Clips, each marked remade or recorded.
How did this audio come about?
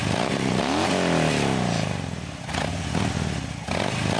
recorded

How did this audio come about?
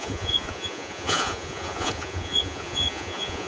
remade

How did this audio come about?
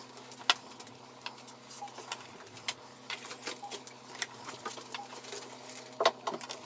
recorded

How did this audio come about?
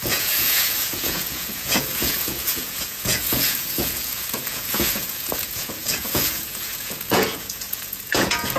remade